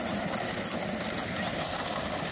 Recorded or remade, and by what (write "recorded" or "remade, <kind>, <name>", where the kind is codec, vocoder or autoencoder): recorded